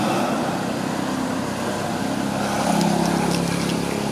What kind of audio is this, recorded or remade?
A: recorded